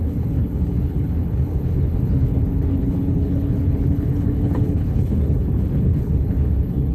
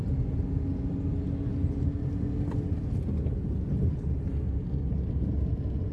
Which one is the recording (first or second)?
second